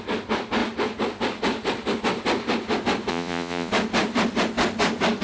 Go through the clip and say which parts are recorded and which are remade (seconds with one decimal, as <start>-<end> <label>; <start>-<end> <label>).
0.0-3.1 recorded; 3.1-3.7 remade; 3.7-5.2 recorded